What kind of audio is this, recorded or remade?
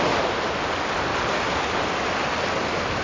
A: recorded